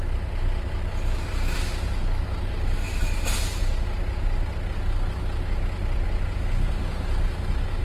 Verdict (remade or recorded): recorded